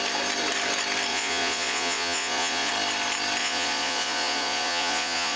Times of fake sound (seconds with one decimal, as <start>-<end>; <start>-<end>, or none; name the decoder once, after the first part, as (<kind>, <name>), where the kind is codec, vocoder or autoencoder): 1.1-2.7 (vocoder, Vocos); 3.4-5.4